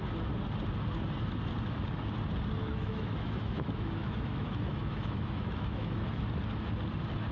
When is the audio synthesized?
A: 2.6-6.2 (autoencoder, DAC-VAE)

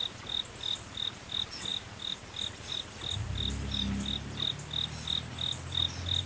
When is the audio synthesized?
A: none

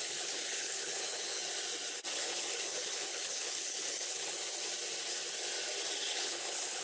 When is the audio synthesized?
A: 0.0-1.4 (codec, HILCodec); 2.1-4.4; 6.1-6.8

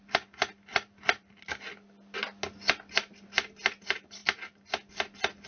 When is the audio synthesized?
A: 0.7-1.4 (vocoder, BigVGAN v2)

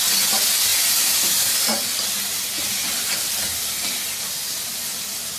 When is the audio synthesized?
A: none

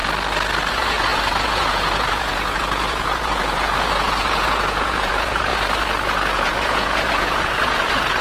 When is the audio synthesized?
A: 0.7-8.2 (vocoder, Vocos)

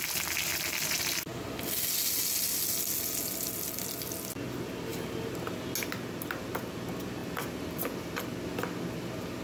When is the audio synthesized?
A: 0.5-1.0 (vocoder, BigVGAN v2); 7.2-8.2

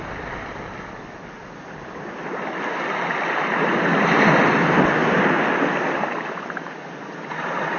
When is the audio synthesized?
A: none